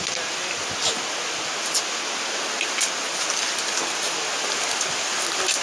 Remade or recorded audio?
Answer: recorded